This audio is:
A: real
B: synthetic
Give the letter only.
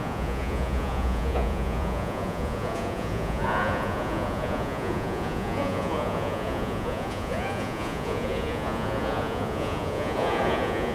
B